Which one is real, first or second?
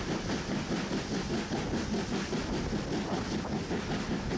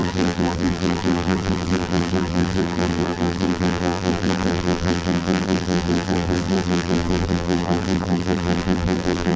first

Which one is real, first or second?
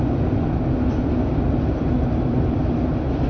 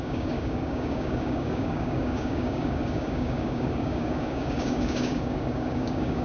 first